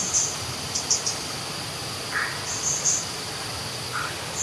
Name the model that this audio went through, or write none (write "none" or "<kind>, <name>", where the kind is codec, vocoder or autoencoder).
none